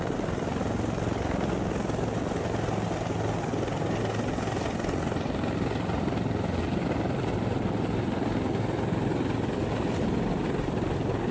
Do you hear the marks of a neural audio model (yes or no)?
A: no